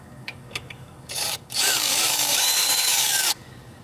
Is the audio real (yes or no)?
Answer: no